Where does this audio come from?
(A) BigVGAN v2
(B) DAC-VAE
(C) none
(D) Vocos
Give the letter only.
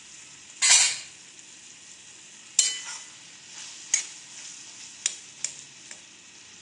C